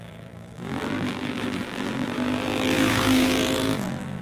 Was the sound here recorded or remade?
remade